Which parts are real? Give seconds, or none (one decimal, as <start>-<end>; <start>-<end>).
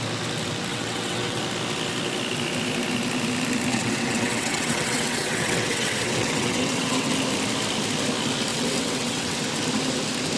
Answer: 0.0-0.7; 1.4-3.7; 7.1-8.5; 9.4-10.4